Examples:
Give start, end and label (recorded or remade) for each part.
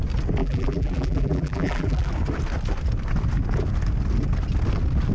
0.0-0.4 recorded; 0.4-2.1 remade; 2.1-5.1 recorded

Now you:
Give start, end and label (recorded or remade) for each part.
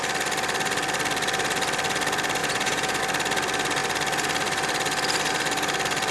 0.0-2.4 recorded; 2.4-3.0 remade; 3.0-6.1 recorded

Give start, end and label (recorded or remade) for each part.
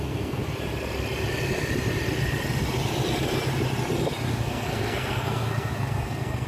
0.0-0.4 remade; 0.4-4.3 recorded; 4.3-6.5 remade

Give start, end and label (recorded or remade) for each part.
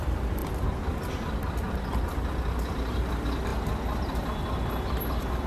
0.0-5.5 recorded